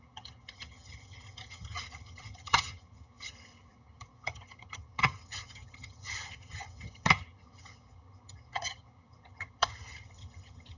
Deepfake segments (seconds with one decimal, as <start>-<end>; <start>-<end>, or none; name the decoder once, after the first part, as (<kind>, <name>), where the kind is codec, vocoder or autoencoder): 0.0-10.8 (vocoder, HiFi-GAN)